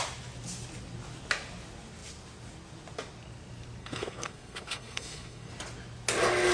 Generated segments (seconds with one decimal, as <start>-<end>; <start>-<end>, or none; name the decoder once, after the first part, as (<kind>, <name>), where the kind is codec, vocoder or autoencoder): 3.8-5.5 (codec, SNAC)